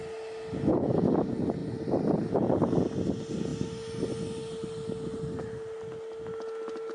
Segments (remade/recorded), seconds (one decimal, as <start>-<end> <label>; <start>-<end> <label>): 0.0-6.9 recorded